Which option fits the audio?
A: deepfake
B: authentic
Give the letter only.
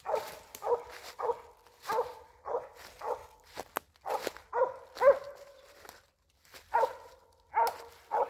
B